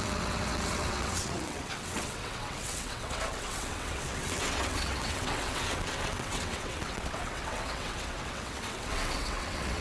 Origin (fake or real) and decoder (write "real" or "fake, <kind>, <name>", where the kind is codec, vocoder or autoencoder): fake, vocoder, WaveNeXt